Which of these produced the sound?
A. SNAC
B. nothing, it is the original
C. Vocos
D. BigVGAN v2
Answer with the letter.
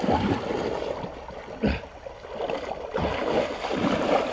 B